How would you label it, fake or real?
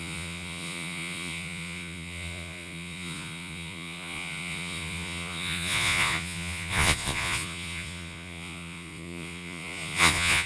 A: fake